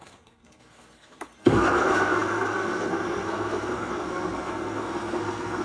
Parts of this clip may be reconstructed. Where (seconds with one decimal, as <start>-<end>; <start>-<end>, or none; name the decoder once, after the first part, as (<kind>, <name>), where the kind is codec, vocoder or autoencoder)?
0.0-5.6 (codec, SNAC)